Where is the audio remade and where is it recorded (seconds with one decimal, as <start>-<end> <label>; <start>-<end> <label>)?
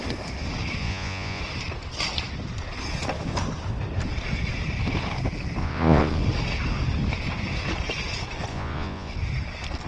0.0-0.8 recorded; 0.8-1.4 remade; 1.4-5.6 recorded; 5.6-6.2 remade; 6.2-8.5 recorded; 8.5-9.1 remade; 9.1-9.9 recorded